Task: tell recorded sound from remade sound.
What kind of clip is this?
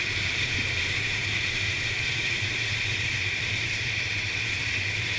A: remade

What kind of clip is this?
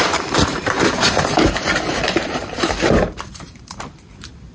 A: remade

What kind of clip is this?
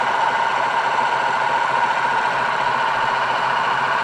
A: recorded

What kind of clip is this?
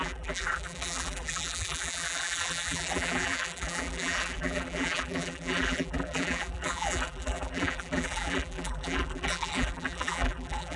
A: remade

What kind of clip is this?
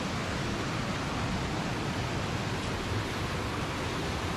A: recorded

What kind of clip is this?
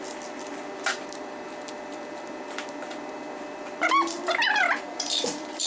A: remade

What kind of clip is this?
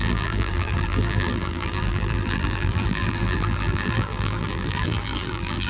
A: remade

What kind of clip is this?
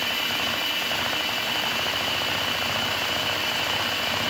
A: recorded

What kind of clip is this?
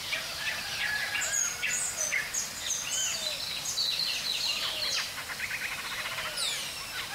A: recorded